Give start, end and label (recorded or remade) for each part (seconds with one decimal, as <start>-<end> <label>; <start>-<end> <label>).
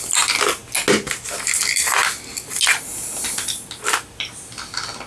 0.0-5.1 recorded